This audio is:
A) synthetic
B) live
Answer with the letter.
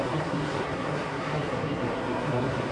A